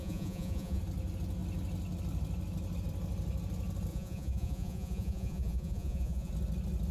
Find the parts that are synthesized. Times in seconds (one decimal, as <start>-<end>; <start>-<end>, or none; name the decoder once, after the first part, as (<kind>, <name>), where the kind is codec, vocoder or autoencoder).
0.0-0.8 (vocoder, Vocos); 3.9-6.3